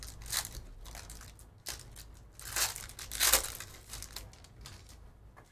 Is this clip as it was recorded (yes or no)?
yes